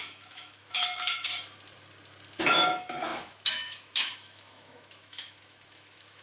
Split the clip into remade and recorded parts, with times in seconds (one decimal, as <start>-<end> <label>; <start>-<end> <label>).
0.0-1.3 remade; 1.3-2.4 recorded; 2.4-6.2 remade